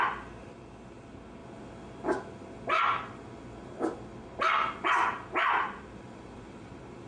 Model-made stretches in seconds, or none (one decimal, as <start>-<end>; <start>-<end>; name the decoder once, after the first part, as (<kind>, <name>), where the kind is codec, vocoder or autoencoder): 0.0-1.4 (vocoder, BigVGAN v2); 4.9-7.1